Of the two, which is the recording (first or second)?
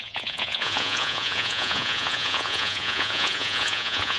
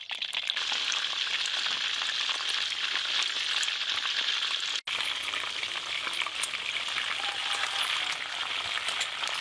second